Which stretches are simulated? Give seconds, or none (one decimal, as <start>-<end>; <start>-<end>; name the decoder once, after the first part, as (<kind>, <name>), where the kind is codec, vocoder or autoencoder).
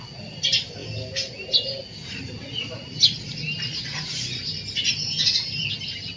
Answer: none